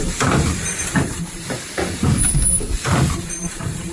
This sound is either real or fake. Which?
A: fake